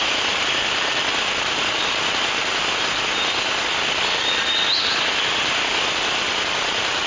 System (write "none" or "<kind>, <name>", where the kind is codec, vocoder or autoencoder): none